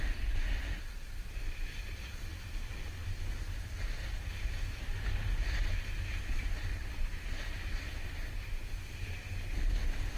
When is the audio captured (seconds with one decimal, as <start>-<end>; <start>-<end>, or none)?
0.0-10.2